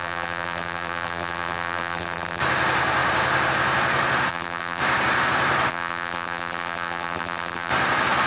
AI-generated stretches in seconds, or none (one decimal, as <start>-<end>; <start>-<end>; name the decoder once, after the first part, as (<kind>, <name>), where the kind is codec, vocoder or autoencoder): 0.0-2.4 (vocoder, BigVGAN v2); 4.3-4.8; 5.7-7.7